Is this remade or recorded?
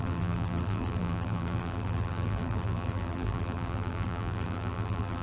remade